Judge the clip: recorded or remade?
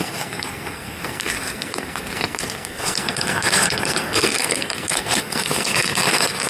remade